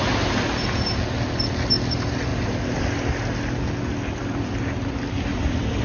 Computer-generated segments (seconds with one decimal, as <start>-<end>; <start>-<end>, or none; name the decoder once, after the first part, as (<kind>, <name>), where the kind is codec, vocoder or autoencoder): none